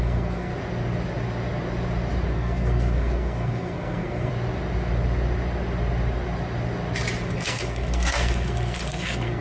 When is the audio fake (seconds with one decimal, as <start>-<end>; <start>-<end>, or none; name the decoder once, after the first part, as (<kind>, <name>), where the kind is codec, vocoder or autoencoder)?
0.0-0.5 (codec, SNAC); 2.3-4.3; 7.3-9.4